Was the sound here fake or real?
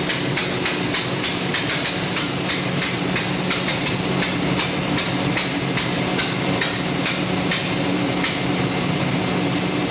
real